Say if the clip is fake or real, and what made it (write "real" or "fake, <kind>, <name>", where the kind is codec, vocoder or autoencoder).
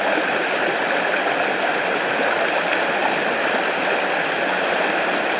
real